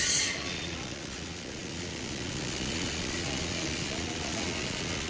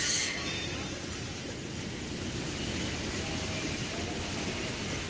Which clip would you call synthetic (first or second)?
first